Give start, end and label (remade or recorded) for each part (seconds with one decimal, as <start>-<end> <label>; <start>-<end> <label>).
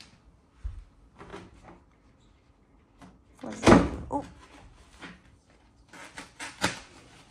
0.0-1.3 remade; 1.3-5.0 recorded; 5.0-7.3 remade